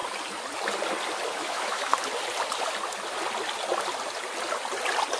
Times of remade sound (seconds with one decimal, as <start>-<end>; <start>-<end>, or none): 1.3-1.9